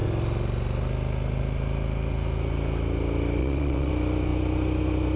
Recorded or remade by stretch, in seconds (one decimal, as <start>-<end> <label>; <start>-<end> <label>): 0.0-3.4 recorded; 3.4-3.9 remade; 3.9-5.2 recorded